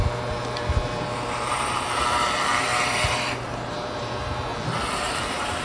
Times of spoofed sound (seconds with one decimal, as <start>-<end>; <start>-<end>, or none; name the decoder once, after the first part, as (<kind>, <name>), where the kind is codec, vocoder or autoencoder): 0.0-4.5 (vocoder, BigVGAN v2); 5.0-5.6